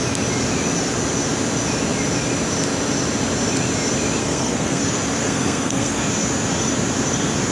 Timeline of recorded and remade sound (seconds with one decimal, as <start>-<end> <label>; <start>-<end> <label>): 0.0-4.2 recorded; 4.2-4.8 remade; 4.8-5.2 recorded; 5.2-6.0 remade; 6.0-7.5 recorded

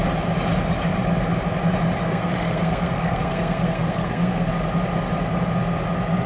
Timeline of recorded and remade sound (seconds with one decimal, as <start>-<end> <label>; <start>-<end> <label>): 0.0-2.1 recorded; 2.1-4.5 remade; 4.5-6.3 recorded